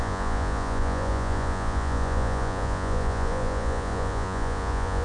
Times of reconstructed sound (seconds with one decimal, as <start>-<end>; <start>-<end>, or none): 0.0-5.0